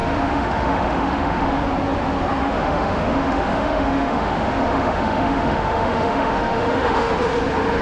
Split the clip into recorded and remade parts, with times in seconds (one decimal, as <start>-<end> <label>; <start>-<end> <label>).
0.0-1.6 remade; 1.6-2.4 recorded; 2.4-7.1 remade; 7.1-7.8 recorded